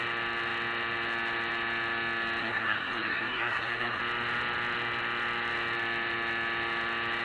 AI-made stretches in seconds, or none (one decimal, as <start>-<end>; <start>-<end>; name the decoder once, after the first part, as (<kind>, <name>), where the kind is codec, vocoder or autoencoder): 2.4-4.0 (codec, SNAC)